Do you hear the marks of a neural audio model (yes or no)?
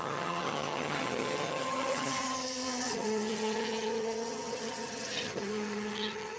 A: yes